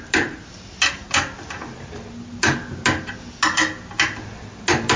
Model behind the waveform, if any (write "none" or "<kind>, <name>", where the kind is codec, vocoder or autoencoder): none